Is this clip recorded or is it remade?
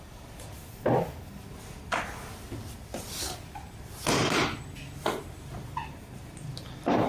recorded